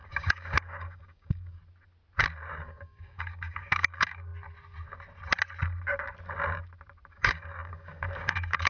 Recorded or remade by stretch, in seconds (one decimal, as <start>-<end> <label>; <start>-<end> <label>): 0.0-1.6 remade; 1.6-2.5 recorded; 2.5-4.3 remade; 4.3-7.1 recorded; 7.1-8.7 remade